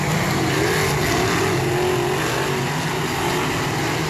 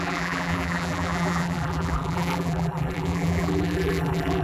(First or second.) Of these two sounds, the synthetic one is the second